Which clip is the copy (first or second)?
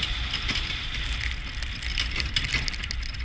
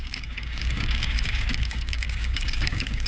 second